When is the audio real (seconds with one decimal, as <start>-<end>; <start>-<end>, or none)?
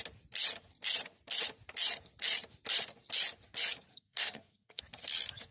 0.0-3.9; 4.8-5.5